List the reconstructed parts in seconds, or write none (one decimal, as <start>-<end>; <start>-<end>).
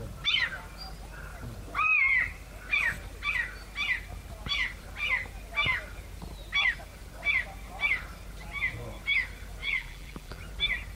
9.6-10.4